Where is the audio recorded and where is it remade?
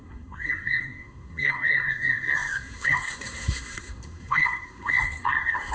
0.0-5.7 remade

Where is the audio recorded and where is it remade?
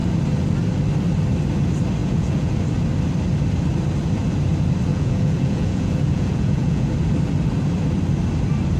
0.0-2.0 recorded; 2.0-2.5 remade; 2.5-4.9 recorded; 4.9-6.9 remade; 6.9-8.8 recorded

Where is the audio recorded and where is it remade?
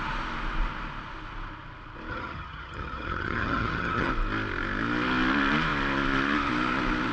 0.0-2.1 recorded; 2.1-4.1 remade; 4.1-7.1 recorded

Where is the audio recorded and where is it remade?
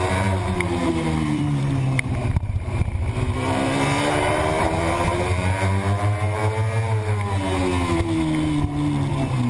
0.0-6.4 remade; 6.4-9.1 recorded; 9.1-9.5 remade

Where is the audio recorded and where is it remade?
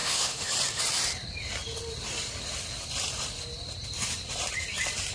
0.0-0.5 remade; 0.5-5.1 recorded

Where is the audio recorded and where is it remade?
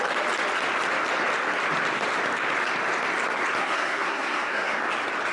0.0-3.6 recorded; 3.6-4.8 remade; 4.8-5.3 recorded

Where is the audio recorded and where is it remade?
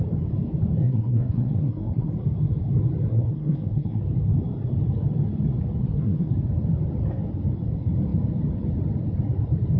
0.0-0.8 recorded; 0.8-2.1 remade; 2.1-3.1 recorded; 3.1-4.0 remade; 4.0-5.8 recorded; 5.8-6.3 remade; 6.3-9.8 recorded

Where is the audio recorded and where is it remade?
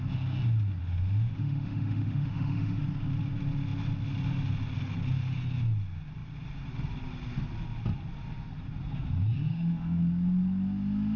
0.0-0.8 recorded; 0.8-2.8 remade; 2.8-9.5 recorded; 9.5-10.0 remade; 10.0-11.2 recorded